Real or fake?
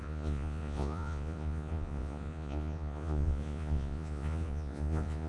fake